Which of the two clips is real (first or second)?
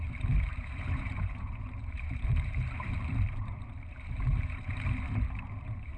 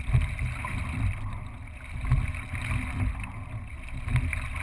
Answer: second